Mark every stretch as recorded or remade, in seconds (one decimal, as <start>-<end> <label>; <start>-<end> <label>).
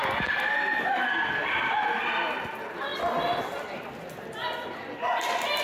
0.0-5.6 recorded